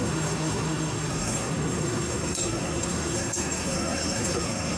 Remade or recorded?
remade